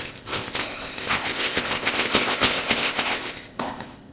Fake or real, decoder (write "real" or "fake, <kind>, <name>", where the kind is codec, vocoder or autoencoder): fake, codec, ZipCodec